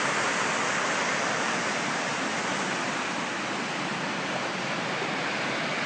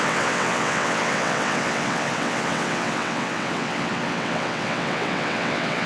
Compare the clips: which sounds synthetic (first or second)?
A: second